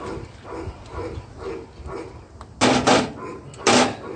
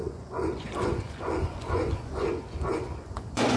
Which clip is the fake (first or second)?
second